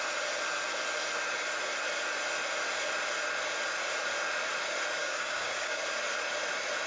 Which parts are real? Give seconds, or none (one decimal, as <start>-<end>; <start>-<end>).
0.0-5.0; 5.8-6.9